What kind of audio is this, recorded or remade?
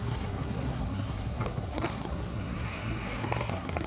remade